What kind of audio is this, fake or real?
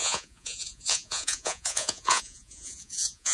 fake